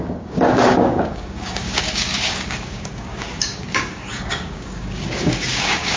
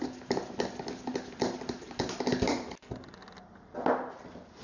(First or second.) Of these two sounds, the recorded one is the second